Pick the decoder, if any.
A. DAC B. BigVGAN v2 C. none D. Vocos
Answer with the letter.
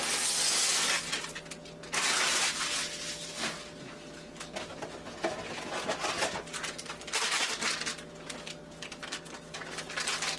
C